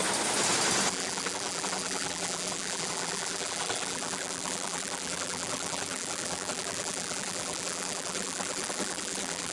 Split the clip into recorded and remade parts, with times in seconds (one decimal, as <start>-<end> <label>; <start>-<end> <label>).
0.0-0.9 recorded; 0.9-9.5 remade